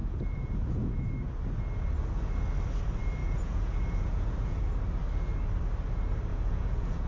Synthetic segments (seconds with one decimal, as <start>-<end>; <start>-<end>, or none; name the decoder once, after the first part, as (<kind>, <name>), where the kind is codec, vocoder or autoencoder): 0.0-1.1 (vocoder, Vocos); 3.2-4.6; 6.3-7.1